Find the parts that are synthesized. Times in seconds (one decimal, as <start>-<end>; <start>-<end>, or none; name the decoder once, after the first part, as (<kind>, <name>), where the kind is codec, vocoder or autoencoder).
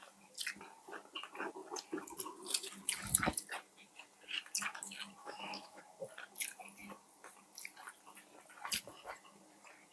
5.2-5.8 (autoencoder, DAC-VAE)